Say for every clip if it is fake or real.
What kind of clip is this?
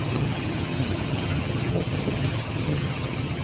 fake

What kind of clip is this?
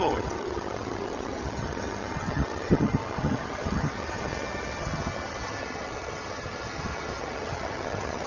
fake